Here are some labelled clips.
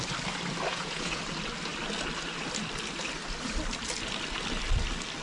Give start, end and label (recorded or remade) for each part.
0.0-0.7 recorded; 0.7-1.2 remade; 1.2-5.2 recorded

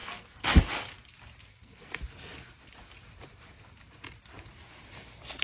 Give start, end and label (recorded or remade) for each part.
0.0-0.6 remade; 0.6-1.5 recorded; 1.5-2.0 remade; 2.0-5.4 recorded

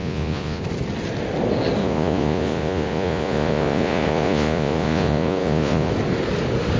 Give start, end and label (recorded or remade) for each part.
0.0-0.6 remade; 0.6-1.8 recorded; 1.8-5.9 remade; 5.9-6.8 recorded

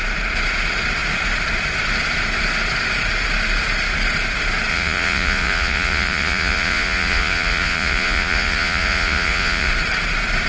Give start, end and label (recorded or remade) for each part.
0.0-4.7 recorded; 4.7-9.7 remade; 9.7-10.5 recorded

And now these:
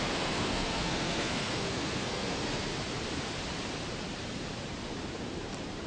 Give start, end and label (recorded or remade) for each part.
0.0-2.7 remade; 2.7-5.9 recorded

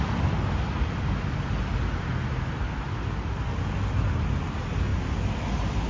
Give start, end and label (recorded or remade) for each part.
0.0-5.9 recorded